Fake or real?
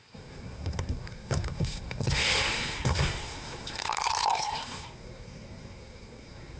fake